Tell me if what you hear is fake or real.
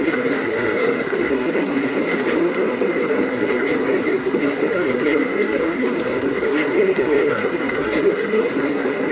fake